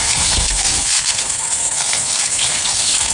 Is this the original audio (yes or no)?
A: no